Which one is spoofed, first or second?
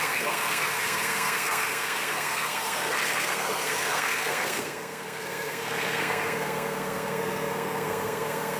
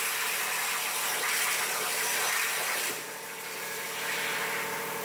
first